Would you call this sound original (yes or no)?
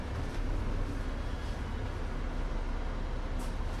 yes